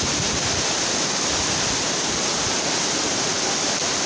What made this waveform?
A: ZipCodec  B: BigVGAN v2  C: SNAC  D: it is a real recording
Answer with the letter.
D